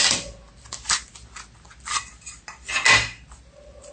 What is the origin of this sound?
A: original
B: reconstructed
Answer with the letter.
A